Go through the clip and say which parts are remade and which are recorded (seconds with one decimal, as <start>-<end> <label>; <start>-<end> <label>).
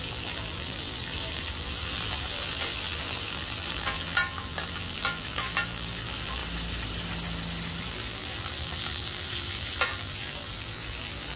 0.0-6.4 remade; 6.4-7.8 recorded; 7.8-11.4 remade